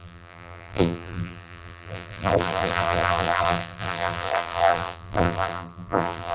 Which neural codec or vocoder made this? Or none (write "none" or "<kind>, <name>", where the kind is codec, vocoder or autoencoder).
vocoder, BigVGAN v2